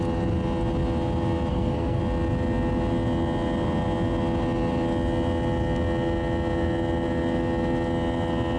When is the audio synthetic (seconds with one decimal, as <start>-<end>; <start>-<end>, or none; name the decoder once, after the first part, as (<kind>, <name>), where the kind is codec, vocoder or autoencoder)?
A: 1.5-2.0 (codec, SNAC)

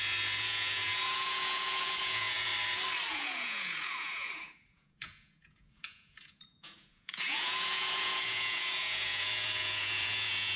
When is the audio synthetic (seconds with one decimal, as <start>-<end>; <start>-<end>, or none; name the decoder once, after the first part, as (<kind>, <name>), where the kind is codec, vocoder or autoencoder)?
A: 0.0-2.5 (vocoder, Vocos); 3.1-10.6

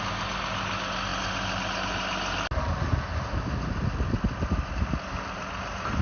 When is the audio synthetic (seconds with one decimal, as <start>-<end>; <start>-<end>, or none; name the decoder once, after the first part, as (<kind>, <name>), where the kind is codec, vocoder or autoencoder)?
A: none

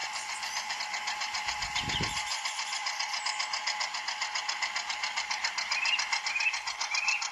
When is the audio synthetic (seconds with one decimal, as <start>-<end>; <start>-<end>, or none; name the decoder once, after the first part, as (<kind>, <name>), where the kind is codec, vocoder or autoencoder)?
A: 0.0-0.8 (vocoder, Vocos); 2.3-3.2

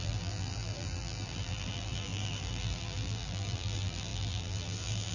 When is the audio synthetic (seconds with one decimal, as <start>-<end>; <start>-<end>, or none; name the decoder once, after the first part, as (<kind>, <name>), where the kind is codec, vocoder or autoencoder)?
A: 0.0-5.1 (vocoder, BigVGAN v2)